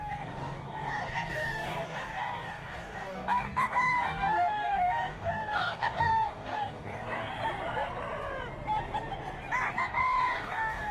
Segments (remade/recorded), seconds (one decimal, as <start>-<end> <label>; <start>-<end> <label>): 0.0-7.3 remade; 7.3-9.7 recorded; 9.7-10.9 remade